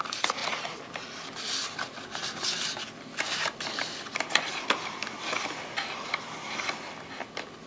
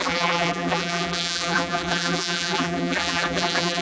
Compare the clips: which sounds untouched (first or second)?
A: first